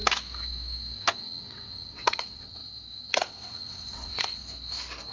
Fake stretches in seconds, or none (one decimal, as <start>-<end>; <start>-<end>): 1.2-2.6; 3.1-4.4